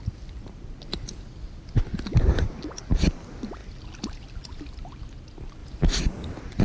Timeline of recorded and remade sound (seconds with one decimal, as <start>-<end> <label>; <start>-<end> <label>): 0.0-6.6 recorded